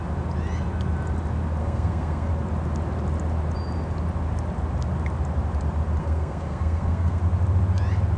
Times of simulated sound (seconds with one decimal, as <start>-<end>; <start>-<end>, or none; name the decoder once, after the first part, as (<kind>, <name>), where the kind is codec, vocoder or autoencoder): 1.6-2.3 (codec, SNAC); 6.0-7.2